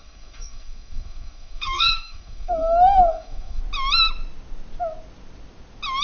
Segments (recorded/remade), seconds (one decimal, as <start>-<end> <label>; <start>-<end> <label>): 0.0-3.6 remade; 3.6-6.0 recorded